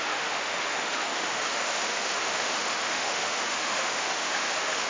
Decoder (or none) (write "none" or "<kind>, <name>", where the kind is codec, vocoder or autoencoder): autoencoder, DAC-VAE